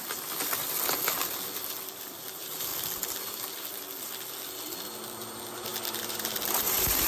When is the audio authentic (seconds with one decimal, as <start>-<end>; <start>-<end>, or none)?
0.0-5.7